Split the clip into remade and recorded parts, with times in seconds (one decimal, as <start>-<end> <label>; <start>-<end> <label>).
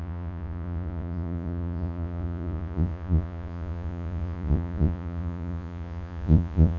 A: 0.0-6.8 remade